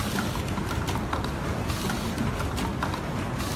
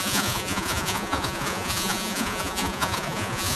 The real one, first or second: first